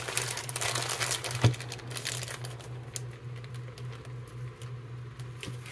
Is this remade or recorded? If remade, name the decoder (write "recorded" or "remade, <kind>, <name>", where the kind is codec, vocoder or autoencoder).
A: recorded